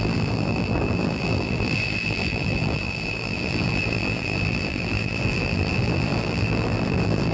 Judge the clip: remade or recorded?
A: remade